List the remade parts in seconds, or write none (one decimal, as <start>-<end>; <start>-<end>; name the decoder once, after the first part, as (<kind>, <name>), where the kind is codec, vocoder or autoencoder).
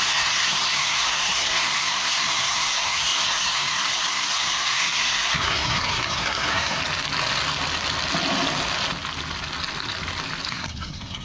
0.0-6.8 (codec, SNAC); 10.5-11.2